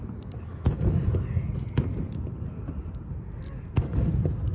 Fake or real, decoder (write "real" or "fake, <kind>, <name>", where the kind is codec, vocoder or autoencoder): real